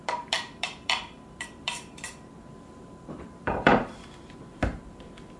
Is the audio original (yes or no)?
no